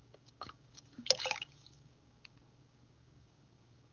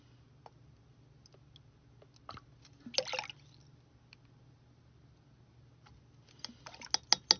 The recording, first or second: second